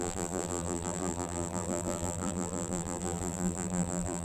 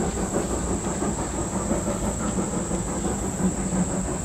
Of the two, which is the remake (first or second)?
first